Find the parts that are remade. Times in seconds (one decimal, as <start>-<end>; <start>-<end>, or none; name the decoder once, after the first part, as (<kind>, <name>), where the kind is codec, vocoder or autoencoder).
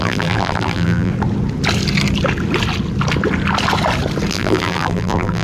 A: 0.0-1.1 (vocoder, BigVGAN v2); 4.3-5.4